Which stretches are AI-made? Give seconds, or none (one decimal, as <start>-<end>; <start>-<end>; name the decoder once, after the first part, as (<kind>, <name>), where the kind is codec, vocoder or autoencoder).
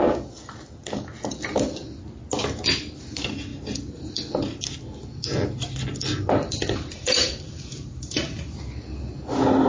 3.5-4.2 (vocoder, BigVGAN v2); 5.9-8.3